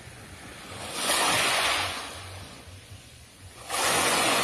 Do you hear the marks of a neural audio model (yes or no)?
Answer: yes